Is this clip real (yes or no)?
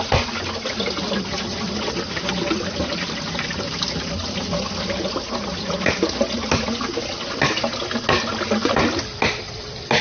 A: yes